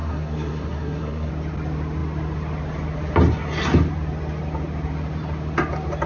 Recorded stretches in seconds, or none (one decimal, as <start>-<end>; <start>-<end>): 1.3-6.1